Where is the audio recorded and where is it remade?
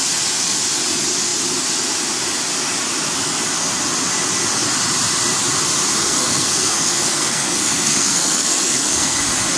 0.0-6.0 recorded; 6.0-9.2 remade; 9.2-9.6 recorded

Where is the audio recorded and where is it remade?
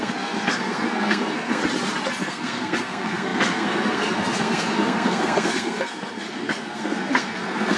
0.0-1.6 remade; 1.6-2.2 recorded; 2.2-7.8 remade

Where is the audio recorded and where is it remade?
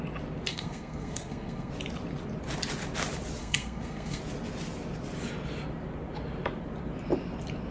0.0-0.5 recorded; 0.5-1.7 remade; 1.7-3.4 recorded; 3.4-4.2 remade; 4.2-7.7 recorded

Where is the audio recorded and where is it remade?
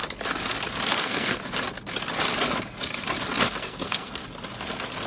0.0-0.9 recorded; 0.9-1.4 remade; 1.4-3.4 recorded; 3.4-4.2 remade; 4.2-5.1 recorded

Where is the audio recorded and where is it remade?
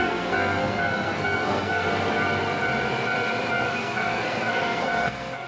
0.0-1.9 remade; 1.9-3.5 recorded; 3.5-5.5 remade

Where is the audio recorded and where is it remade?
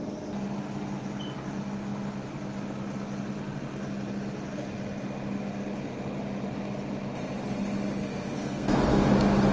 0.0-8.0 recorded; 8.0-9.1 remade; 9.1-9.5 recorded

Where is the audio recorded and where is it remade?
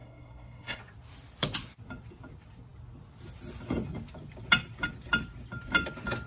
0.0-0.8 remade; 0.8-6.3 recorded